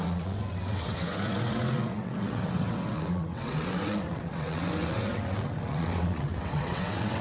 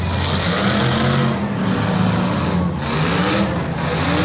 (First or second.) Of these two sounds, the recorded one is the second